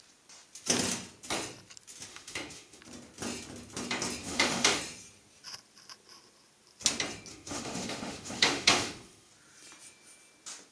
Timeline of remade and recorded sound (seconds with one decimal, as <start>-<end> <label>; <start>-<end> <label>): 0.0-2.1 recorded; 2.1-2.8 remade; 2.8-4.2 recorded; 4.2-4.8 remade; 4.8-7.3 recorded; 7.3-9.3 remade; 9.3-10.7 recorded